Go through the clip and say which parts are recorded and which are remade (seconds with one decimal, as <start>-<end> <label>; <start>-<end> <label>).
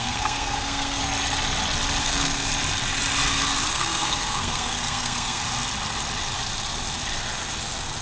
0.0-1.0 remade; 1.0-2.0 recorded; 2.0-2.5 remade; 2.5-3.7 recorded; 3.7-5.4 remade; 5.4-8.0 recorded